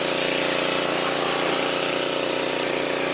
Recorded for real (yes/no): yes